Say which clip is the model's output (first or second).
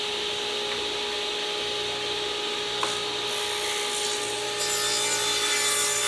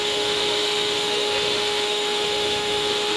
second